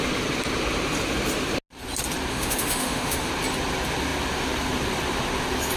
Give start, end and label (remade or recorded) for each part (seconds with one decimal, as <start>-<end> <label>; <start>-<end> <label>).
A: 0.0-2.3 recorded; 2.3-3.3 remade; 3.3-5.8 recorded